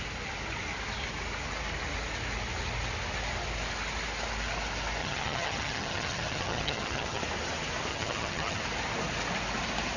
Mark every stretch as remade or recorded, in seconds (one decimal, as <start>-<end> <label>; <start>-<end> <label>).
0.0-5.0 recorded; 5.0-7.2 remade; 7.2-7.9 recorded; 7.9-8.6 remade; 8.6-10.0 recorded

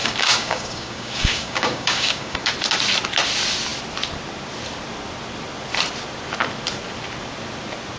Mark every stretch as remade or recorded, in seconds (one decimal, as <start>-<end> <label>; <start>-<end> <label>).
0.0-2.5 remade; 2.5-8.0 recorded